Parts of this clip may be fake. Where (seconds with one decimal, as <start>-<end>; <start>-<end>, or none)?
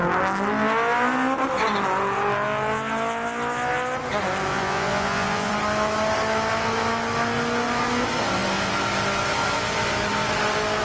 4.5-5.5